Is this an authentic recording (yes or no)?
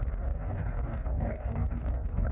no